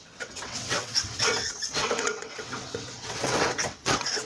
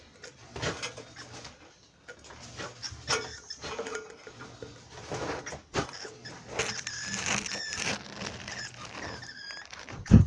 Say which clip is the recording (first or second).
second